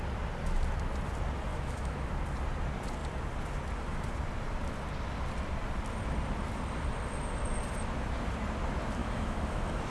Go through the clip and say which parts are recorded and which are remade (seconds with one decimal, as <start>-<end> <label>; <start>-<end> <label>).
0.0-1.5 recorded; 1.5-2.1 remade; 2.1-9.0 recorded; 9.0-9.9 remade